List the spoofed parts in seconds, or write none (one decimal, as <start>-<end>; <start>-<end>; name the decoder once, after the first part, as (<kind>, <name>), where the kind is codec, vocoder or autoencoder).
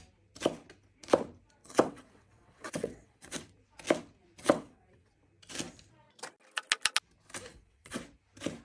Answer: 1.6-3.4 (vocoder, WaveNeXt); 4.4-5.1; 7.5-8.0